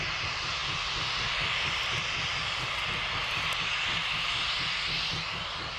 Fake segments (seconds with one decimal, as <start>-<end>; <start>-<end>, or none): none